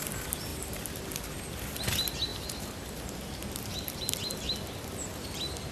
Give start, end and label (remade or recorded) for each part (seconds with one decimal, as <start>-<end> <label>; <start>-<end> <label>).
0.0-0.5 recorded; 0.5-1.0 remade; 1.0-2.3 recorded; 2.3-4.1 remade; 4.1-5.7 recorded